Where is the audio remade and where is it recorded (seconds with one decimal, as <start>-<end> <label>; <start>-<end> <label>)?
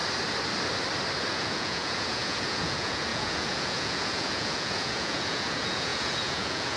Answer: 0.0-1.3 recorded; 1.3-6.8 remade